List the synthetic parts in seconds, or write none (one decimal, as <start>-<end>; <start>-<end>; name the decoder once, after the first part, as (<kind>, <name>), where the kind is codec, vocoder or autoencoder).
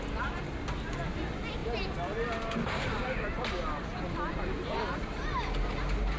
none